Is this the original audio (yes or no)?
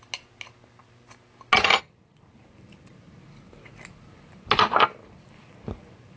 yes